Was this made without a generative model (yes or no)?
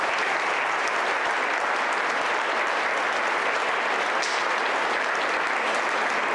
yes